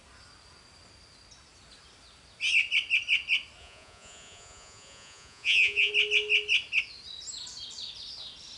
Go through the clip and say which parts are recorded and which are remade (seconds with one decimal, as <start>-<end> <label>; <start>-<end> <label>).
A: 0.0-3.6 recorded; 3.6-5.9 remade; 5.9-8.6 recorded